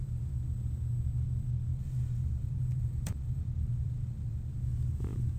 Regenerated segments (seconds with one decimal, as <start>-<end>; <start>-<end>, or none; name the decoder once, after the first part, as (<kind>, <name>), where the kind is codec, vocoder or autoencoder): 1.7-4.5 (vocoder, BigVGAN v2)